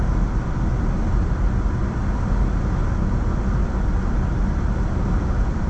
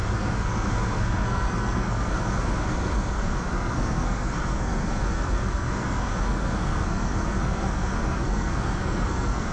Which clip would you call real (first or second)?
first